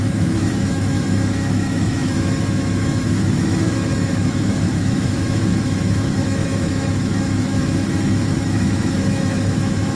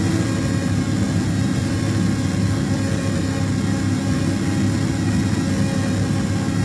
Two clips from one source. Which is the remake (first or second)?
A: first